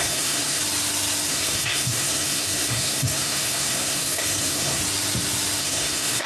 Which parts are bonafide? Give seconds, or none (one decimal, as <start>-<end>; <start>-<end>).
0.6-1.3; 4.8-5.6